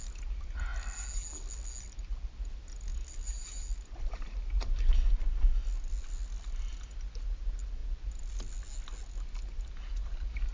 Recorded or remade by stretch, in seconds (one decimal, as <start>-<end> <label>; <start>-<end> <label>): 0.0-2.9 recorded; 2.9-5.0 remade; 5.0-10.5 recorded